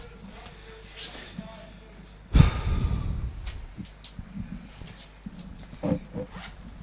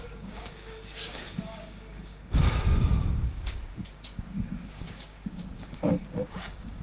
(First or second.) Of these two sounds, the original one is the first